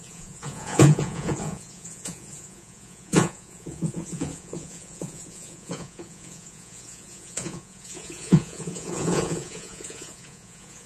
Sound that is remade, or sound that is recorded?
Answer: remade